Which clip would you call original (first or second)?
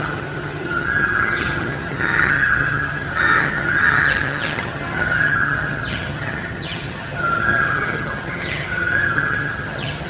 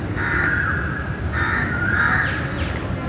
second